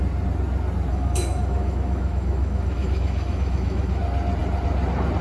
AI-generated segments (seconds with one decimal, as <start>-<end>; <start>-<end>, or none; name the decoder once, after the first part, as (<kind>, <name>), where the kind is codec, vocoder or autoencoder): 0.9-4.0 (autoencoder, DAC-VAE)